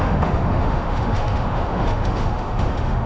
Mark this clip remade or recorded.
remade